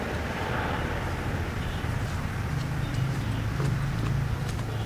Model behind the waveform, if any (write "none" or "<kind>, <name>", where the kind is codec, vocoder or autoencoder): none